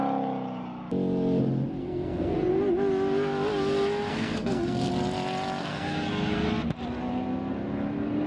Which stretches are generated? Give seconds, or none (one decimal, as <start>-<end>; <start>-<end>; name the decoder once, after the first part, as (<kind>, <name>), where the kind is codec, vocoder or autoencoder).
1.8-2.3 (codec, SNAC); 4.1-4.9; 5.6-6.5